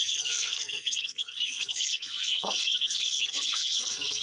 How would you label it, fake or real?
fake